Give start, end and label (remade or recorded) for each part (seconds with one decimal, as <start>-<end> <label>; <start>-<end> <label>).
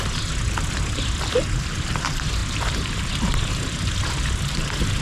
0.0-5.0 recorded